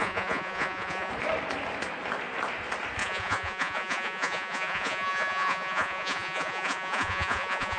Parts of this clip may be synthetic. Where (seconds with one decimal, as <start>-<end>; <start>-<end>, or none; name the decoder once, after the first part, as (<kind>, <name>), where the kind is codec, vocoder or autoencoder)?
0.0-1.1 (vocoder, Vocos); 3.0-7.8